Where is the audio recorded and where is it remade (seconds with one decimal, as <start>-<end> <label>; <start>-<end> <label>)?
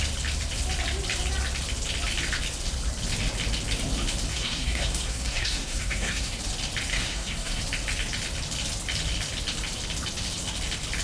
0.0-4.3 recorded; 4.3-6.4 remade; 6.4-6.9 recorded; 6.9-7.6 remade; 7.6-11.0 recorded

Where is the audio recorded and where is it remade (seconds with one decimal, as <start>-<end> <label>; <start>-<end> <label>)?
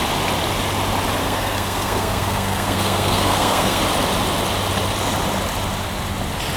0.0-1.2 recorded; 1.2-3.8 remade; 3.8-6.6 recorded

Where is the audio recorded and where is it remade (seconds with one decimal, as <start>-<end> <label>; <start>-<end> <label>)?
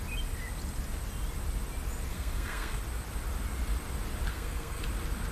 0.0-2.1 recorded; 2.1-2.8 remade; 2.8-4.3 recorded; 4.3-4.8 remade; 4.8-5.3 recorded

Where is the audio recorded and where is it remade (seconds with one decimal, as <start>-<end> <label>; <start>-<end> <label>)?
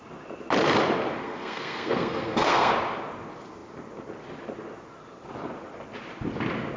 0.0-1.2 recorded; 1.2-2.7 remade; 2.7-6.8 recorded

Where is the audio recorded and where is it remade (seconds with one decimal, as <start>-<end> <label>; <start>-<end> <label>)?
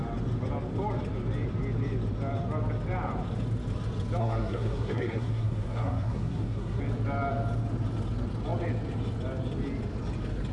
0.0-4.2 recorded; 4.2-6.8 remade; 6.8-10.5 recorded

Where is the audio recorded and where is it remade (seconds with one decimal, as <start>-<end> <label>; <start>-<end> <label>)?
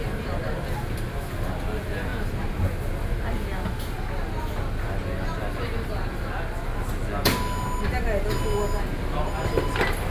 0.0-10.1 recorded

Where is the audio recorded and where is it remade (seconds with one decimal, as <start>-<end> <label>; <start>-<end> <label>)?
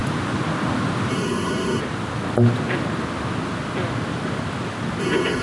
0.0-1.1 recorded; 1.1-1.8 remade; 1.8-5.0 recorded; 5.0-5.4 remade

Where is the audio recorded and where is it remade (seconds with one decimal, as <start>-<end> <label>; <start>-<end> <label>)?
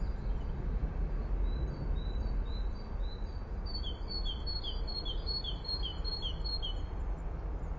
0.0-7.8 recorded